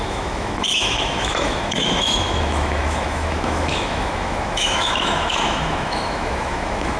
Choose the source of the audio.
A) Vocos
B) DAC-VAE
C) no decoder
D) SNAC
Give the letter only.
B